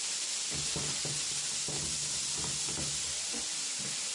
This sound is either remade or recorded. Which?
recorded